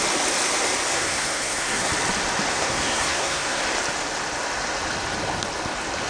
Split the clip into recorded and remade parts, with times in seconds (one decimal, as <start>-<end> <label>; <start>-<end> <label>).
0.0-0.9 recorded; 0.9-1.9 remade; 1.9-2.5 recorded; 2.5-3.6 remade; 3.6-6.1 recorded